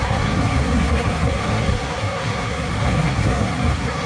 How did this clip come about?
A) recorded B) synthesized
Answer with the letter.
B